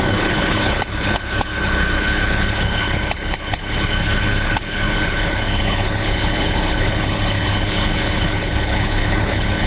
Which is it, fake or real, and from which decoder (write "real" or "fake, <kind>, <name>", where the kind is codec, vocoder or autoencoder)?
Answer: fake, codec, HILCodec